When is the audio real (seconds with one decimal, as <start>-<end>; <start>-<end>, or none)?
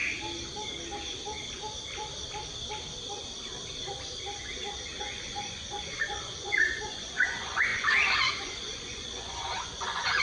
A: 0.0-5.0